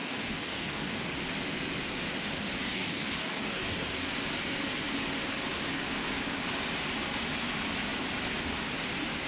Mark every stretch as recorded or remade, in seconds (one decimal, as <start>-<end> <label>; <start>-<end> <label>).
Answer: 0.0-1.1 remade; 1.1-2.6 recorded; 2.6-4.1 remade; 4.1-9.3 recorded